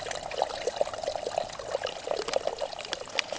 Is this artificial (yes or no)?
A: no